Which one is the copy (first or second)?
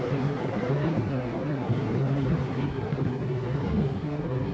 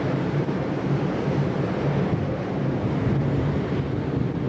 first